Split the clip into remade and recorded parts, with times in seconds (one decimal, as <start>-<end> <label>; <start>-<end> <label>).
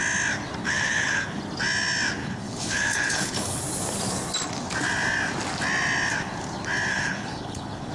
0.0-0.6 recorded; 0.6-1.4 remade; 1.4-2.2 recorded; 2.2-3.6 remade; 3.6-6.9 recorded; 6.9-7.9 remade